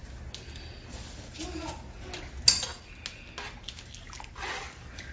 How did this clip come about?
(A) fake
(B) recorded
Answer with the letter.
B